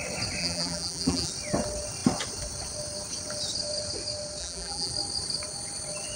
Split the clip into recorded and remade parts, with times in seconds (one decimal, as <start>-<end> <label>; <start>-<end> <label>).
0.0-0.4 recorded; 0.4-1.3 remade; 1.3-4.4 recorded; 4.4-4.9 remade; 4.9-6.2 recorded